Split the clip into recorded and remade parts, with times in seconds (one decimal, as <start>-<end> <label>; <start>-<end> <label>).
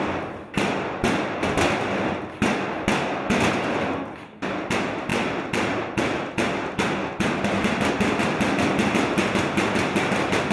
0.0-10.5 recorded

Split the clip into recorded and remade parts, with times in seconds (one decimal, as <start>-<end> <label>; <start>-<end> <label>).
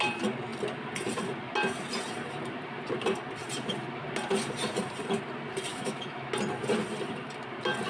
0.0-5.7 recorded; 5.7-6.2 remade; 6.2-7.9 recorded